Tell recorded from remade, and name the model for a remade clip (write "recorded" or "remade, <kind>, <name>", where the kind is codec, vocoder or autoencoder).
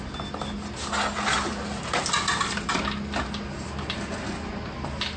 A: recorded